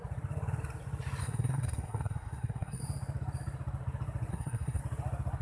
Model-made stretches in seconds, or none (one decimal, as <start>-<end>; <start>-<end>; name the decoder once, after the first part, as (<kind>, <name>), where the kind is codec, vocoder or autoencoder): 1.2-2.8 (codec, SNAC); 4.3-4.8